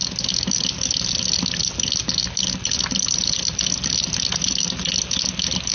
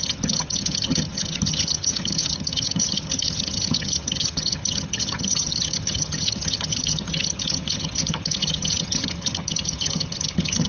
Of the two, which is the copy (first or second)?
second